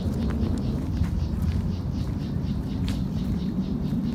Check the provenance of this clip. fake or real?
real